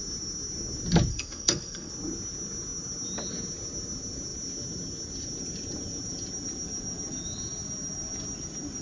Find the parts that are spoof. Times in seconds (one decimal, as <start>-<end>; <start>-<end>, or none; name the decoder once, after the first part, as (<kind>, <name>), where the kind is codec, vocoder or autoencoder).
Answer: 1.1-1.9 (codec, SNAC)